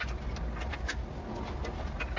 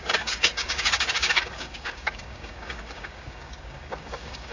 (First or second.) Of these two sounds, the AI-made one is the second